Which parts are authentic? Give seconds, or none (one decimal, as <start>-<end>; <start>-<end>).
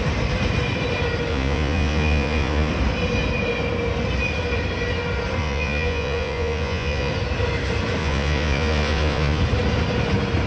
0.0-1.3; 2.7-5.4; 7.1-8.0; 9.4-10.5